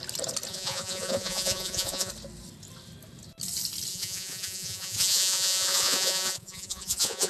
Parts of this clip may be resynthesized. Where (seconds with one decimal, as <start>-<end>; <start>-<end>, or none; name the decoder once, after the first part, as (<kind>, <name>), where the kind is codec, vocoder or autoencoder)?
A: 0.5-2.1 (vocoder, Vocos); 3.9-7.3